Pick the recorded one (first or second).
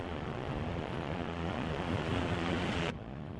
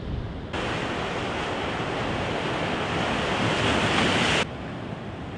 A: second